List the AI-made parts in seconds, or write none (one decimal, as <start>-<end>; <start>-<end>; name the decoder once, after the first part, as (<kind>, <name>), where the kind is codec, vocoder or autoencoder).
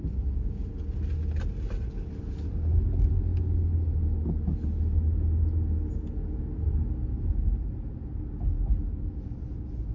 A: none